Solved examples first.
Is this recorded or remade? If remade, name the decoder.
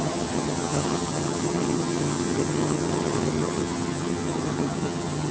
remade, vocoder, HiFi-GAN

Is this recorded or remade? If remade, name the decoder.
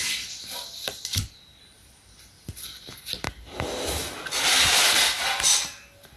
recorded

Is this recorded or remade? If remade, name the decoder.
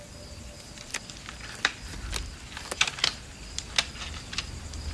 recorded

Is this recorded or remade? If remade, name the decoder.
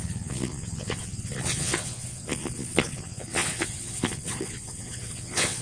remade, vocoder, Vocos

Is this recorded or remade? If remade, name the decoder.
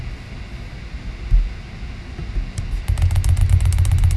recorded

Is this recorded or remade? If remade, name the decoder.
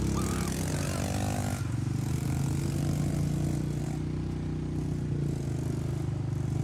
recorded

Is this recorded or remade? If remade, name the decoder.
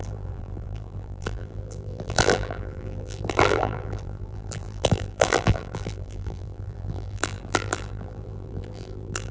remade, vocoder, BigVGAN v2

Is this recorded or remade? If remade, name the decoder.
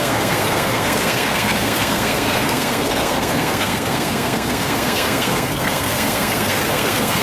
remade, codec, SNAC